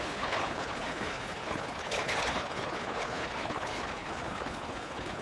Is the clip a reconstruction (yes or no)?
yes